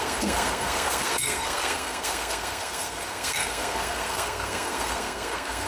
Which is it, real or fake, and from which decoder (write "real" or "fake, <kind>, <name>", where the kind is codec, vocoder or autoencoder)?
fake, codec, SNAC